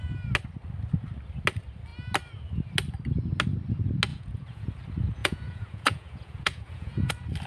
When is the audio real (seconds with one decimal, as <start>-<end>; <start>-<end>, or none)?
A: 0.0-4.1; 4.7-5.2; 7.1-7.5